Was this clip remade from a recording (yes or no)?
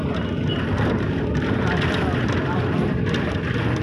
no